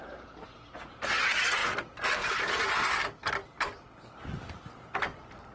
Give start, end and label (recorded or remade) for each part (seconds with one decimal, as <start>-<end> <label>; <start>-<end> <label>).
0.0-1.6 recorded; 1.6-3.2 remade; 3.2-5.5 recorded